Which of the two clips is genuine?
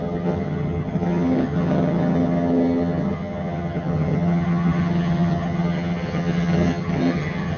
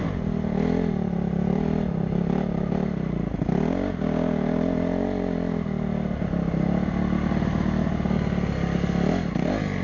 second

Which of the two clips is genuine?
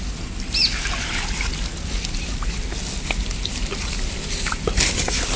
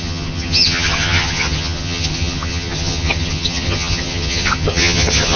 first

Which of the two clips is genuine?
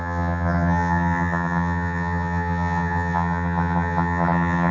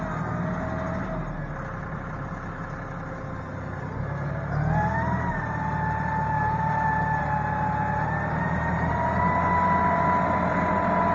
second